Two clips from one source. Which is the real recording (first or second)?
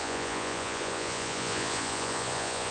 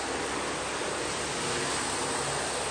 second